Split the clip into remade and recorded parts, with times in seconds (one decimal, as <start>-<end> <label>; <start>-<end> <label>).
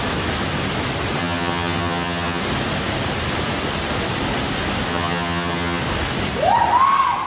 0.0-1.2 recorded; 1.2-2.4 remade; 2.4-4.9 recorded; 4.9-5.8 remade; 5.8-7.3 recorded